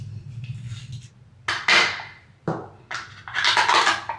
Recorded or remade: recorded